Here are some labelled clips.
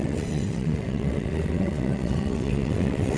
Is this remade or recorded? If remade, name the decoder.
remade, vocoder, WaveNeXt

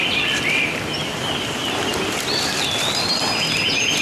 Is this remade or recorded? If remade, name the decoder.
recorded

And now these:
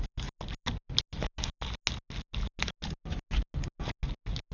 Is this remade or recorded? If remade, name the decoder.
recorded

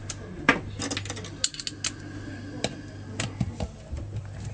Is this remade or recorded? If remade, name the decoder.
recorded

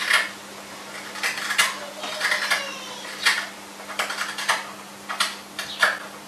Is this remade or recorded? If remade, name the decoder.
recorded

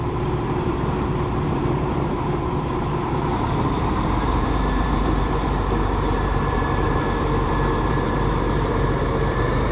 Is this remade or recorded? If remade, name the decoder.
remade, vocoder, BigVGAN v2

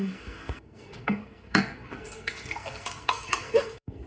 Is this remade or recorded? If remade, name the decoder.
remade, codec, SNAC